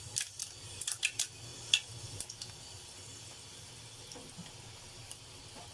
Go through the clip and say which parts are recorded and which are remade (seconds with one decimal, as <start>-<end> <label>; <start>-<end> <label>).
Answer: 0.0-5.7 recorded